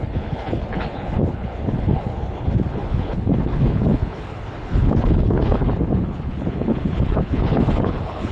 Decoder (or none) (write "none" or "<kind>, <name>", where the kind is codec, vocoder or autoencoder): codec, HILCodec